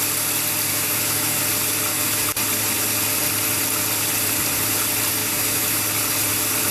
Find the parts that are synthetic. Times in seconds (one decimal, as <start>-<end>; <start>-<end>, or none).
0.7-1.4; 1.9-2.4; 5.2-5.8